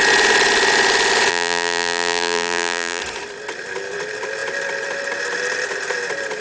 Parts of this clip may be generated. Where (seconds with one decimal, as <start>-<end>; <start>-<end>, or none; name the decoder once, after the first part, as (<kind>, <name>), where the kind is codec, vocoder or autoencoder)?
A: 1.3-3.0 (vocoder, BigVGAN v2)